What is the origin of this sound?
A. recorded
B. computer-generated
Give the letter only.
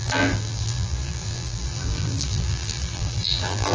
B